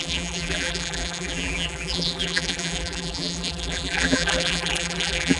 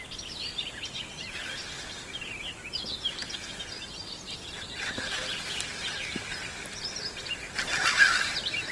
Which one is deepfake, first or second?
first